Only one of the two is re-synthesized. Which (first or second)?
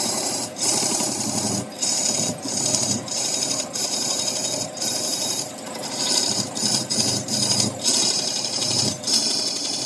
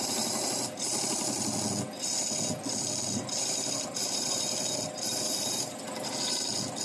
first